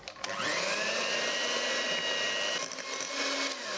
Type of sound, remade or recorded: recorded